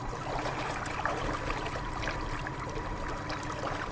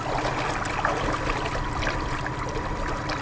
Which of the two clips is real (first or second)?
second